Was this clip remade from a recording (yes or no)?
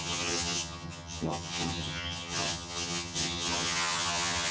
yes